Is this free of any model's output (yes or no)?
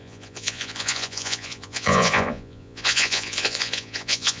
no